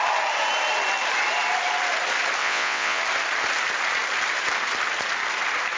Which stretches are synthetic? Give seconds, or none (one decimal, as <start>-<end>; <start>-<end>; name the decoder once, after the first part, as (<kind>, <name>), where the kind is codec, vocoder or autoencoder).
2.4-3.0 (vocoder, WaveNeXt)